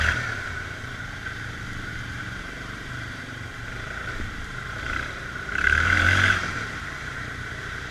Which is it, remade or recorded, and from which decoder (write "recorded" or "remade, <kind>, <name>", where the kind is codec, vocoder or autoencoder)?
remade, vocoder, BigVGAN v2